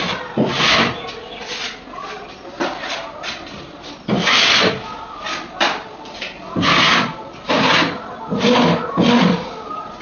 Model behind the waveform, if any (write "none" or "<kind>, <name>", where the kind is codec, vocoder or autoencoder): none